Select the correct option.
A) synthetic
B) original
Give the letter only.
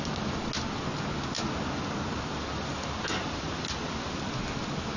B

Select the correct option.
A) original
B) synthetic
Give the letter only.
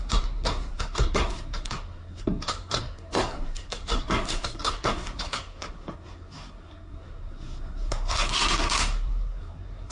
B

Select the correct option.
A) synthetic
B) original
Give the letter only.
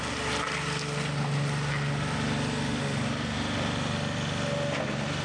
B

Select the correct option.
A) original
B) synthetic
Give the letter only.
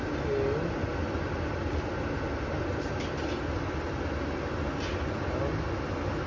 A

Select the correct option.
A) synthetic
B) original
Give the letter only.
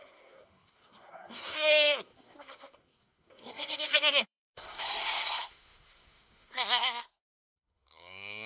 A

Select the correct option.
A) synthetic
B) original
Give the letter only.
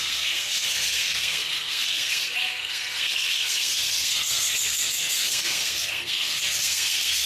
A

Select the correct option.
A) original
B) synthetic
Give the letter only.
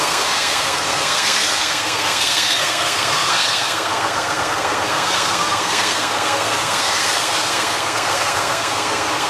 B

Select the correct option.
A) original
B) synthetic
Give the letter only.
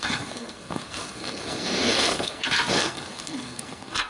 B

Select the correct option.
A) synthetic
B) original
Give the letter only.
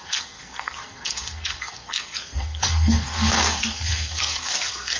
A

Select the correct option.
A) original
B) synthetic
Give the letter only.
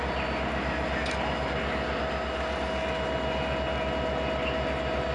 A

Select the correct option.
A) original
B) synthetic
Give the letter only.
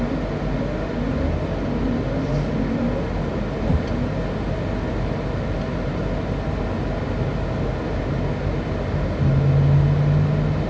A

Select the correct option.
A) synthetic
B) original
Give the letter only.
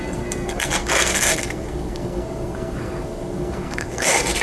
A